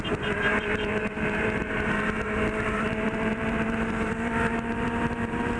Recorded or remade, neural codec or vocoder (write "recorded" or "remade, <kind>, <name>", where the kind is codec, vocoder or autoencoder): remade, vocoder, BigVGAN v2